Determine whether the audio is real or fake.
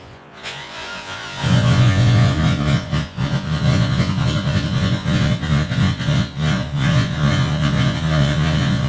fake